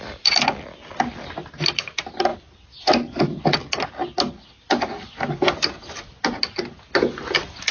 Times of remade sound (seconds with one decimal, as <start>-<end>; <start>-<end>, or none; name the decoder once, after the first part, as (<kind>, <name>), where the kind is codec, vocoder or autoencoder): none